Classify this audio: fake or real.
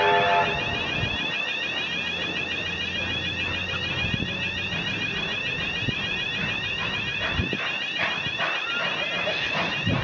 real